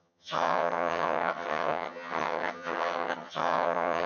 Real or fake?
fake